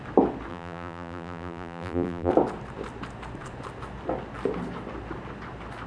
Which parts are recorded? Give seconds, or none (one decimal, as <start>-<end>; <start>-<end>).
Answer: 0.0-0.5; 2.3-5.9